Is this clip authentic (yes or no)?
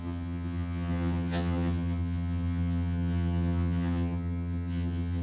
no